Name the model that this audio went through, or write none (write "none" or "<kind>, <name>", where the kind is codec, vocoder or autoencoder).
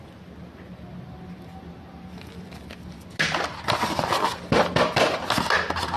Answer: none